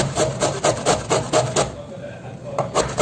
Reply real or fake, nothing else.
real